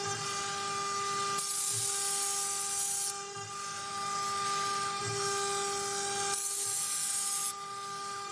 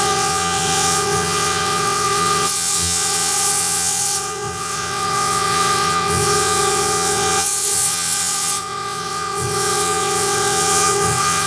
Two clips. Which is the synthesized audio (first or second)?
second